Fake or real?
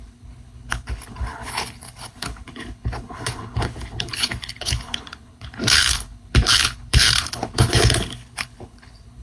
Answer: fake